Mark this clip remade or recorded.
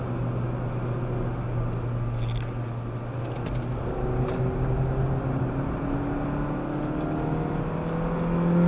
recorded